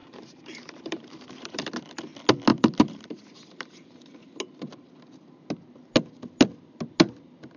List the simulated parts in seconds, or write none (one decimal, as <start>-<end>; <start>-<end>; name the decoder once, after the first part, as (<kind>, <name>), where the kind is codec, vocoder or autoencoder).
0.0-1.7 (vocoder, BigVGAN v2); 2.5-4.0